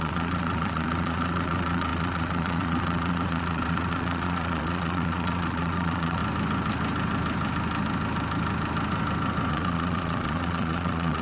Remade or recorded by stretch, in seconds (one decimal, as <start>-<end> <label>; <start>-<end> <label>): 0.0-6.2 remade; 6.2-9.5 recorded; 9.5-11.2 remade